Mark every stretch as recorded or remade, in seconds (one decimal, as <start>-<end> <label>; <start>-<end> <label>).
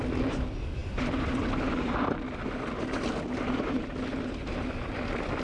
0.0-5.4 recorded